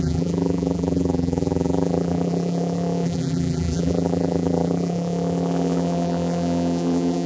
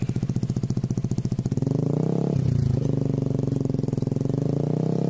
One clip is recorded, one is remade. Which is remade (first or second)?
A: first